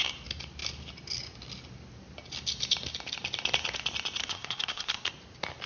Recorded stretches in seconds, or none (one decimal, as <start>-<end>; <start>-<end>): 0.0-4.2; 5.1-5.7